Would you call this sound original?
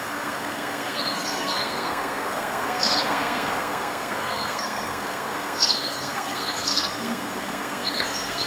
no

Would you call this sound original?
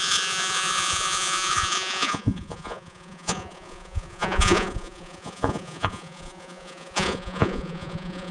no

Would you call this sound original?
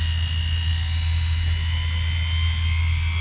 yes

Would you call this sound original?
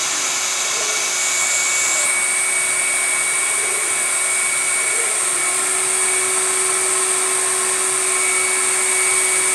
yes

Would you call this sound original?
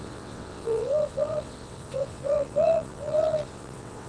no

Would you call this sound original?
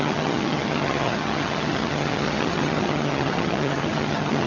no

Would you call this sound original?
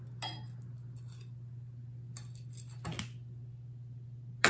yes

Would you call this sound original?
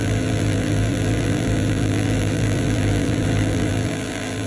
no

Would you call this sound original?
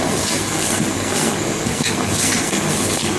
no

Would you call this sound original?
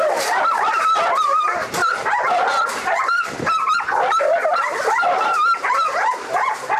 yes